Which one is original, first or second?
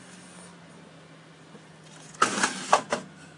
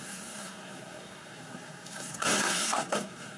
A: first